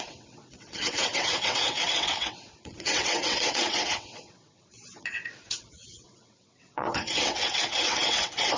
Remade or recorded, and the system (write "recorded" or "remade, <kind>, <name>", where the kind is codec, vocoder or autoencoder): remade, vocoder, WaveNeXt